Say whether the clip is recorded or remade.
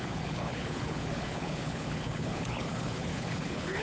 remade